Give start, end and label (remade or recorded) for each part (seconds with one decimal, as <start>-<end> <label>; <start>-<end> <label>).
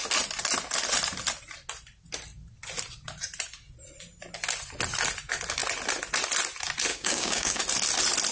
0.0-6.9 recorded; 6.9-7.6 remade; 7.6-8.3 recorded